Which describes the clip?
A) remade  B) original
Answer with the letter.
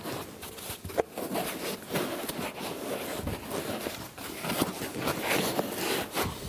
B